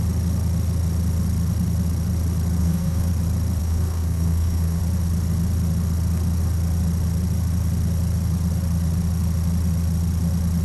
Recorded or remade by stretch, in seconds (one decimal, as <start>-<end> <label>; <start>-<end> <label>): 0.0-2.6 recorded; 2.6-3.1 remade; 3.1-3.6 recorded; 3.6-4.8 remade; 4.8-10.6 recorded